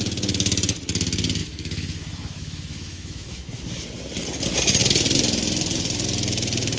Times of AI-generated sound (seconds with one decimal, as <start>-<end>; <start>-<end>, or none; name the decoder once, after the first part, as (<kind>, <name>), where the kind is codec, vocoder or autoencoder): 1.4-3.6 (autoencoder, DAC-VAE)